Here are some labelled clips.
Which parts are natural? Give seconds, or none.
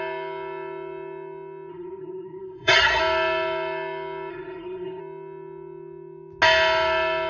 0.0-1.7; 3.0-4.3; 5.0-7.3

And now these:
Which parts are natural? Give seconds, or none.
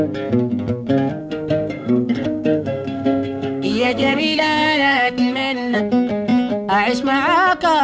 0.0-1.2; 5.8-7.8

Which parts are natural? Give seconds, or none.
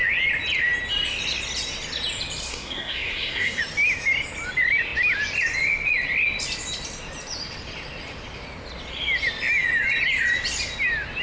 0.0-2.5; 3.6-11.2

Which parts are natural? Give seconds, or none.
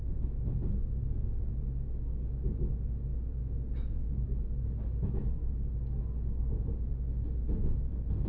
0.0-8.3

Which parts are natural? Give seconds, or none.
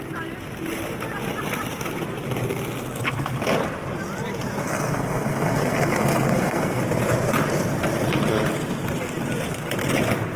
0.0-4.6; 6.8-10.4